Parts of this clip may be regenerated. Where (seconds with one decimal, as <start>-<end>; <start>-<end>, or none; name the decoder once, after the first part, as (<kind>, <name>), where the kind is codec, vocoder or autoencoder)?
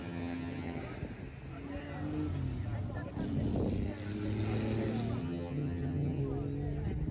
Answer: 0.0-0.8 (vocoder, HiFi-GAN); 5.2-6.2